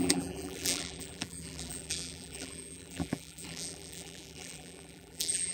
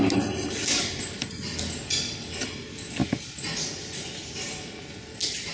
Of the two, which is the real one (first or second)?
second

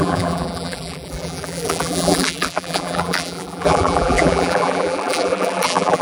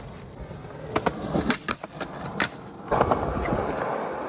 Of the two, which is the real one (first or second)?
second